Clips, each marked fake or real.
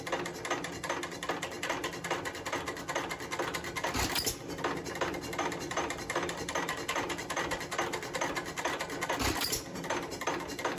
real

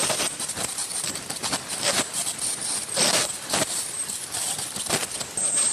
fake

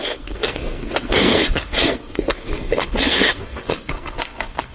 fake